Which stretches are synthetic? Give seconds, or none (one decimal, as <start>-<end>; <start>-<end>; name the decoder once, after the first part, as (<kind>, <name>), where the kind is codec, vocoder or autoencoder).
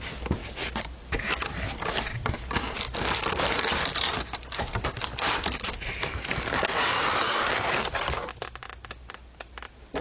none